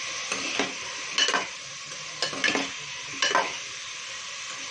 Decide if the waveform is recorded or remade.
recorded